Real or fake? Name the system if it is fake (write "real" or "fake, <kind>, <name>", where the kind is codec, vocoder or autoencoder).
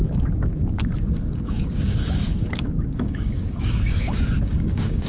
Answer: fake, codec, DAC